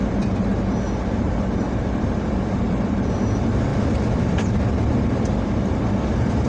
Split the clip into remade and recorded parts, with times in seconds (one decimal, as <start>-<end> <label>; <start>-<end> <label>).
0.0-0.5 remade; 0.5-1.3 recorded; 1.3-3.7 remade; 3.7-4.2 recorded; 4.2-6.5 remade